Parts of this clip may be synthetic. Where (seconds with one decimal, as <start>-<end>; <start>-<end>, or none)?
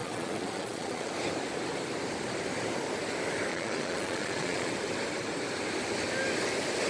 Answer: 0.0-1.1; 3.5-4.7